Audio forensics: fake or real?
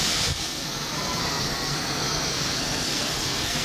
fake